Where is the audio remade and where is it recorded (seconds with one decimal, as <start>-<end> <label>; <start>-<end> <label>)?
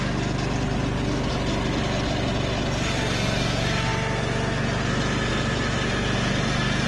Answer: 0.0-6.9 recorded